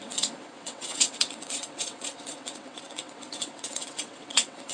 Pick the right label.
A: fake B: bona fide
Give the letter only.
A